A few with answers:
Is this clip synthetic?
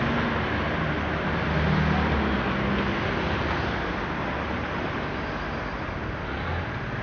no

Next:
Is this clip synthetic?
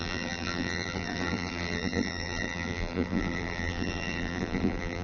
yes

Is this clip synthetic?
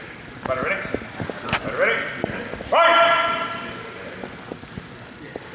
no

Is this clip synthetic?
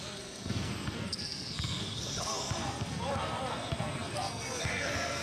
yes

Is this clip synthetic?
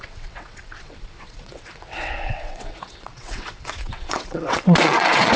yes